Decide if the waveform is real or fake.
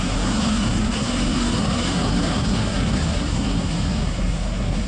fake